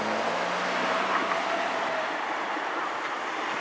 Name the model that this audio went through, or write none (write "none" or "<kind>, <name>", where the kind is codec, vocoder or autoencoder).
none